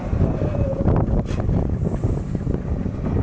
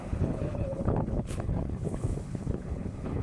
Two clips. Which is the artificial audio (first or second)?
second